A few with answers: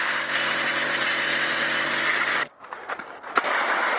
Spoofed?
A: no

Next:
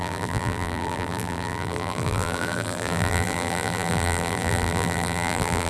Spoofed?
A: yes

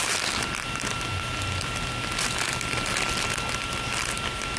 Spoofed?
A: no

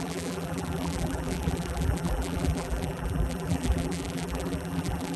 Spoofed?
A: yes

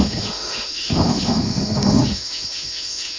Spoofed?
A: yes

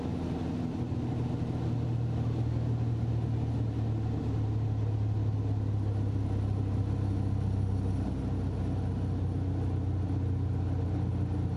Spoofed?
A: no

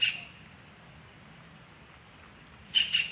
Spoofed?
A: no